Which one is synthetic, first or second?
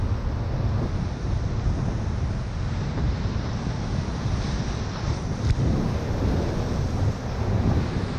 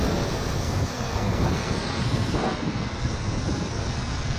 second